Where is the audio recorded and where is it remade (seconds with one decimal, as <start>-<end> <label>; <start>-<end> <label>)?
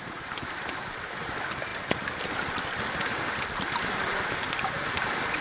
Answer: 0.0-5.4 recorded